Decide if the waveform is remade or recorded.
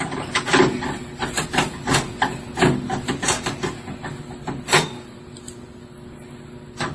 recorded